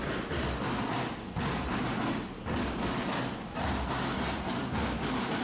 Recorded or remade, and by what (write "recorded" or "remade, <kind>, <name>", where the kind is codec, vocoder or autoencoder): recorded